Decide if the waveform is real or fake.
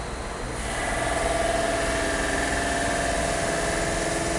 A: real